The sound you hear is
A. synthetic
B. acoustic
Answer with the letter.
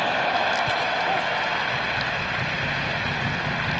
B